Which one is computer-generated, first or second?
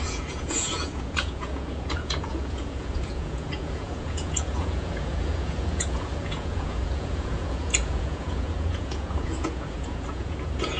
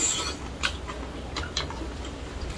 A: first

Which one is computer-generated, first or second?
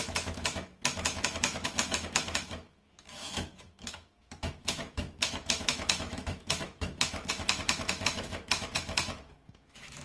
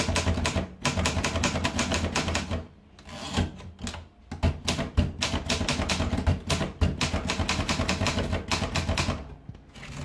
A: first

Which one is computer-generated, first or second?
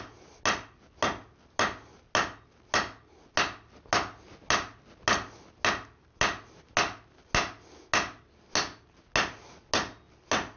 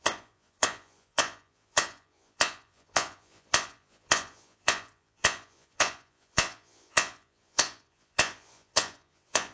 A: second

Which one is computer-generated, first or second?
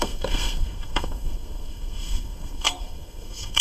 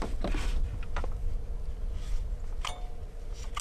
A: first